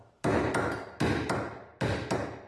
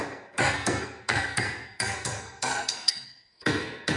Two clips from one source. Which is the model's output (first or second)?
second